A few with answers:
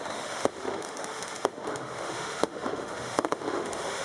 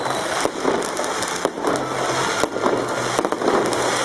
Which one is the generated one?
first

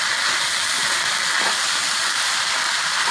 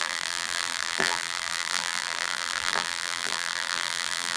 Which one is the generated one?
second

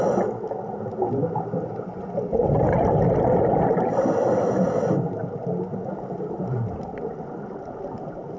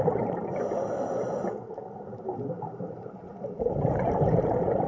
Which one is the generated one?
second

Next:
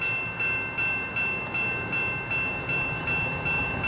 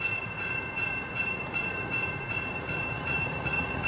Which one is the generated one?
second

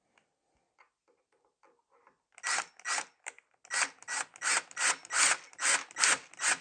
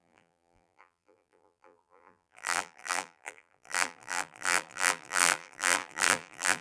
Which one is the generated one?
second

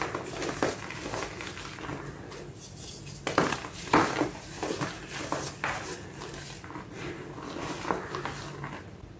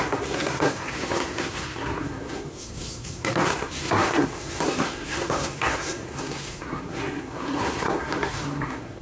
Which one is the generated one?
second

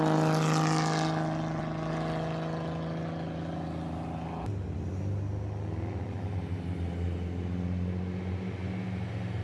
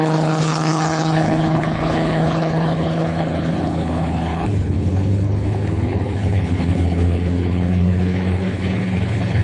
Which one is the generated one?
second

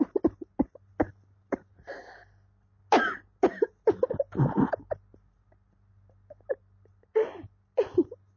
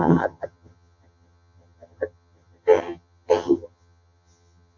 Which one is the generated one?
second